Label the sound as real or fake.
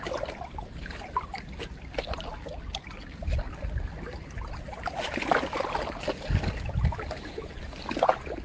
real